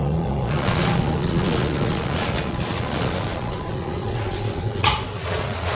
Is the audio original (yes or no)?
no